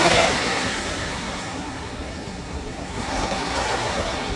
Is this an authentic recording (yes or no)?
no